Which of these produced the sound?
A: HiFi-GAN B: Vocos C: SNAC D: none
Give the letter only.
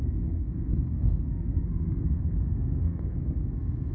C